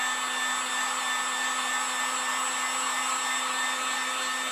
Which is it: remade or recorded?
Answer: recorded